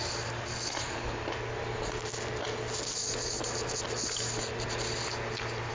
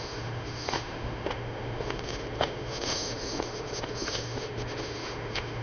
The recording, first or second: first